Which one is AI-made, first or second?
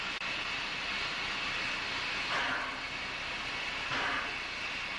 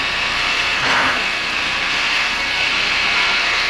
second